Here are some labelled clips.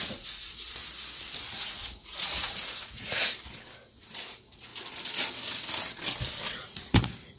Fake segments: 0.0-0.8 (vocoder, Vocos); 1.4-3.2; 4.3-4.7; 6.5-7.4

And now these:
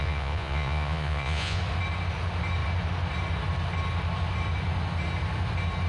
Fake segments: 0.0-1.6 (vocoder, Vocos)

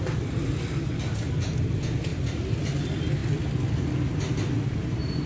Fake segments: none

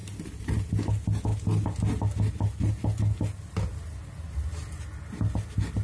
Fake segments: none

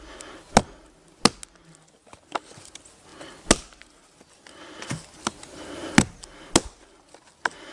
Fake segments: none

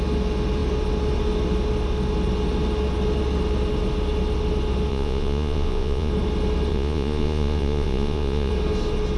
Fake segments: 4.9-6.1 (vocoder, Vocos); 6.7-8.5

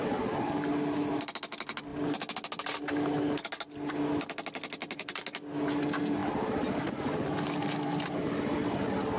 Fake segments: none